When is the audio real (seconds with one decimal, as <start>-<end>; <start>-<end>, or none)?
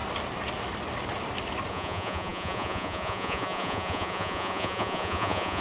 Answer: 0.0-1.7